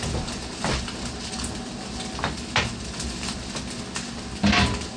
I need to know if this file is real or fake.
real